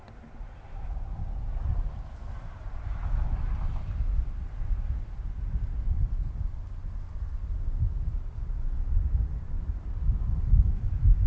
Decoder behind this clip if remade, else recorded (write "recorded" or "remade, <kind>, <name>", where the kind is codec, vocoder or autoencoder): recorded